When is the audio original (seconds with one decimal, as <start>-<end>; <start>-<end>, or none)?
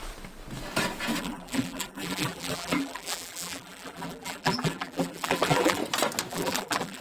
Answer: 0.0-1.2; 5.8-6.3